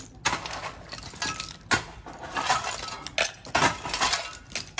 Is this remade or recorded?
recorded